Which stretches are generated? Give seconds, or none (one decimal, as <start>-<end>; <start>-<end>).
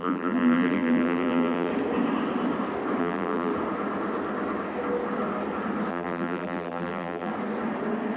0.0-1.7; 3.0-3.5; 5.9-7.3